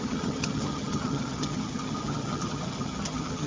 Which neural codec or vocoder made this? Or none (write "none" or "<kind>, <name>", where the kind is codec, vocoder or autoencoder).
vocoder, HiFi-GAN